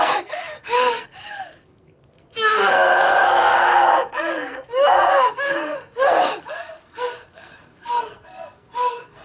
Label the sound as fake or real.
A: fake